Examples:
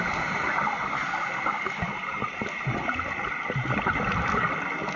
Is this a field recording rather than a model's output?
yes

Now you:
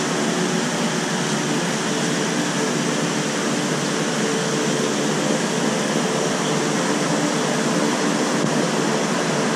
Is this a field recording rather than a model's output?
yes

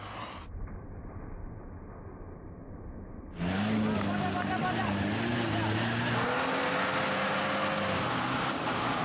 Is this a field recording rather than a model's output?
yes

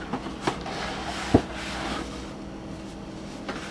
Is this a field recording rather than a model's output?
yes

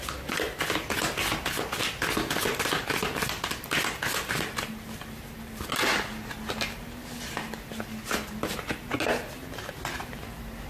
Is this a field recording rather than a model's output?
yes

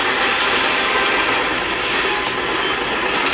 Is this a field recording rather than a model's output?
yes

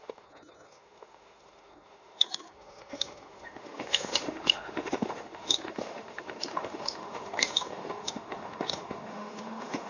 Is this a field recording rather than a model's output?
no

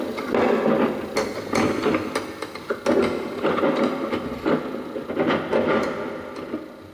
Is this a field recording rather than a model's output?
yes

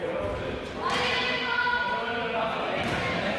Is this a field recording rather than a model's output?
yes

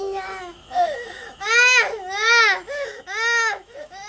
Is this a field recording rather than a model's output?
no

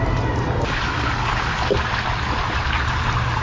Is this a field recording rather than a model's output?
yes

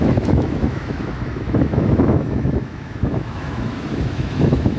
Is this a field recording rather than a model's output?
no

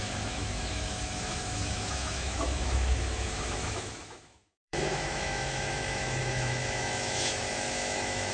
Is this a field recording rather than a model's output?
no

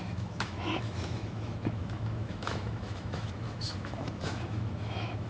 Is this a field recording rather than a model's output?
no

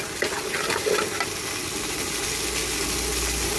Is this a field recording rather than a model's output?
yes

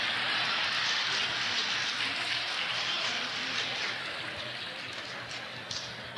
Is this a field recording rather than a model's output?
yes